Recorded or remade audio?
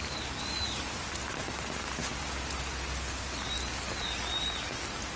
recorded